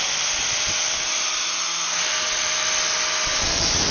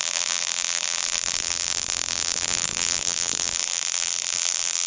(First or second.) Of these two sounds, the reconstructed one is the second